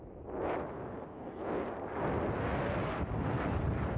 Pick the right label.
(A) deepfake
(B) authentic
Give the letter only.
B